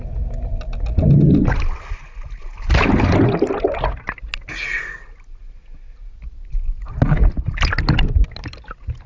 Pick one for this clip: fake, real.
real